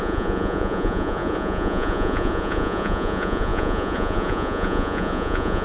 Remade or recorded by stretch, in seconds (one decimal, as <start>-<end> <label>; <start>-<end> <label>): 0.0-5.6 remade